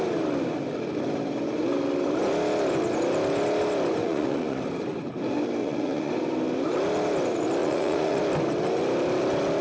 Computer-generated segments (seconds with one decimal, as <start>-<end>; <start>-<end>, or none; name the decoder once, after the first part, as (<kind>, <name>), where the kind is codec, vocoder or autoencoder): 4.0-4.6 (vocoder, Vocos); 5.6-6.1; 7.6-8.2

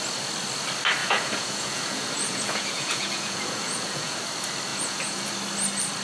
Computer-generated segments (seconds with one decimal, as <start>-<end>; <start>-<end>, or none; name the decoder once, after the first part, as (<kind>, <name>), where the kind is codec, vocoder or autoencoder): 1.0-4.2 (vocoder, Vocos); 4.7-5.3